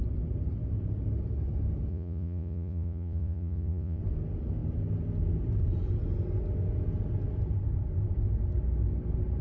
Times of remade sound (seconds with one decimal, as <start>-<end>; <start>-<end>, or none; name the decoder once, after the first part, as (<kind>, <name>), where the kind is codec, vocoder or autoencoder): 1.9-4.0 (vocoder, Vocos)